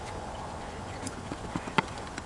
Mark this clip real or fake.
fake